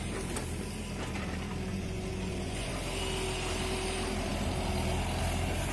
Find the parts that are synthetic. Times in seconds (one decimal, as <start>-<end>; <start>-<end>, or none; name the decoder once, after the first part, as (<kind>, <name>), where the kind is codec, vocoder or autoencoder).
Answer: 1.7-2.7 (vocoder, Vocos)